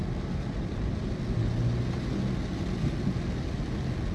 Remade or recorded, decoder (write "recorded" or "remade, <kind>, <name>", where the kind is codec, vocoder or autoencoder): recorded